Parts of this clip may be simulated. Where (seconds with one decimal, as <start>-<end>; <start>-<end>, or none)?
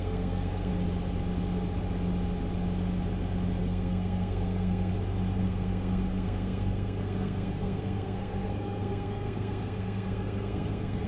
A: 0.0-0.7; 3.6-4.9; 5.4-11.1